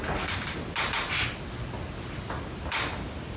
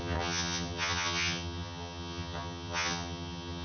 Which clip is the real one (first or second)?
first